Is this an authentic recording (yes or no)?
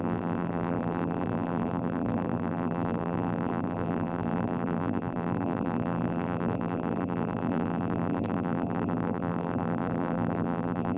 no